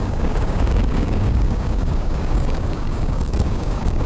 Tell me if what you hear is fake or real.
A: fake